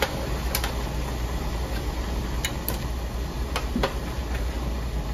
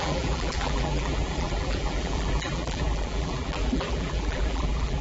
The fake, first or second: second